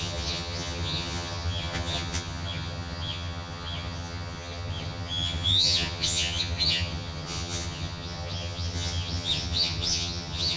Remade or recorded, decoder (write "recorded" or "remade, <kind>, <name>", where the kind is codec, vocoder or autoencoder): remade, vocoder, HiFi-GAN